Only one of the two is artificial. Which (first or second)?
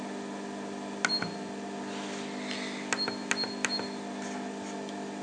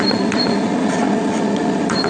second